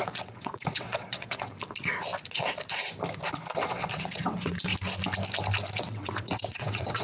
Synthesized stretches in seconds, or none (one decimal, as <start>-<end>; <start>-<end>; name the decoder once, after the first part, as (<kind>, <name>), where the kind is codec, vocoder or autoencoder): 0.0-1.5 (vocoder, WaveNeXt); 3.7-4.7; 5.8-7.0